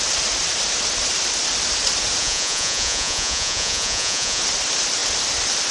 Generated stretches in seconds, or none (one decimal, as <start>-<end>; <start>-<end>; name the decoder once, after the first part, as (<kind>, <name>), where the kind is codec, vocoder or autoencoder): 2.2-4.4 (vocoder, Vocos)